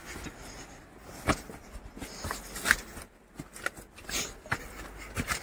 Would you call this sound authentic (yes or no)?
yes